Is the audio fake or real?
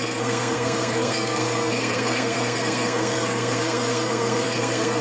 fake